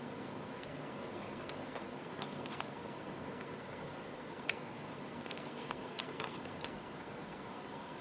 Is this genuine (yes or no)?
no